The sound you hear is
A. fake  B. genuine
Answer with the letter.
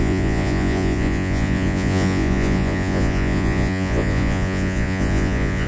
A